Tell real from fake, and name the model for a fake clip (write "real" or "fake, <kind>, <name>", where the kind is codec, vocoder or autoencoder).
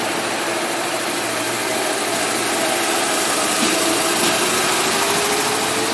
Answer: real